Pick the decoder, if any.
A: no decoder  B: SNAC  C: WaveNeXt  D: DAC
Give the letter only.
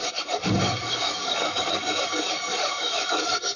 D